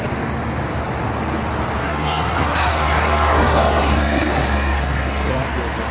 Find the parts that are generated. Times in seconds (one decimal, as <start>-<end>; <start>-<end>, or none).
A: 1.8-5.3